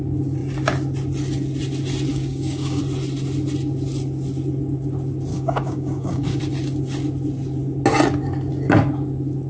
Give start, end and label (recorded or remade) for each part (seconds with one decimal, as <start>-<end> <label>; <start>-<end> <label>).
0.0-2.1 recorded; 2.1-2.8 remade; 2.8-5.3 recorded; 5.3-6.4 remade; 6.4-9.5 recorded